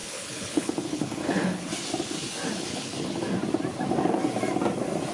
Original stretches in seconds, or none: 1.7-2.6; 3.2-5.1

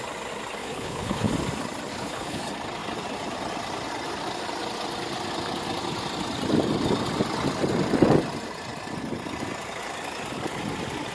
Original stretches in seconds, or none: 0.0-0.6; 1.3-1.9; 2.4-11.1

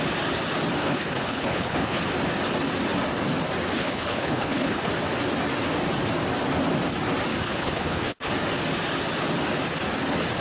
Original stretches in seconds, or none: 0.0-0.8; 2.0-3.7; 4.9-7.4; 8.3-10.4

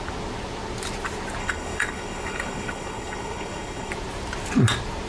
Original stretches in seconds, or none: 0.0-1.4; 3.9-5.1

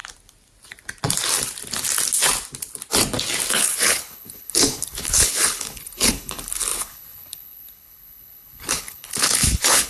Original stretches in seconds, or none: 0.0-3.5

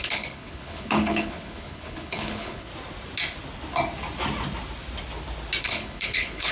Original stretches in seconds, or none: 2.7-5.6